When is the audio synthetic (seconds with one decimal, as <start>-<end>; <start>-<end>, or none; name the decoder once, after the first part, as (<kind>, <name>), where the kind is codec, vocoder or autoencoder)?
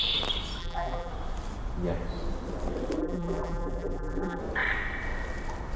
0.6-1.1 (vocoder, BigVGAN v2); 3.0-4.4